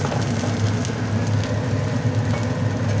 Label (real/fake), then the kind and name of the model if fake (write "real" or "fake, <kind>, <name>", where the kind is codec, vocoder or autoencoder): real